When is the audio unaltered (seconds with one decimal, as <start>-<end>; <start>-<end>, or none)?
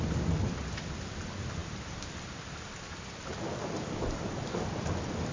0.0-5.3